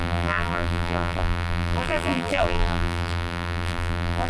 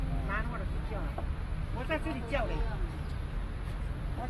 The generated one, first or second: first